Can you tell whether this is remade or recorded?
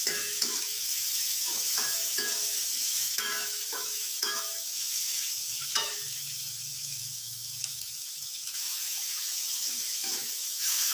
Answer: remade